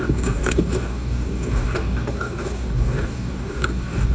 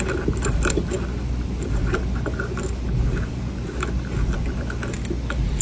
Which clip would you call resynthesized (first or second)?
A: first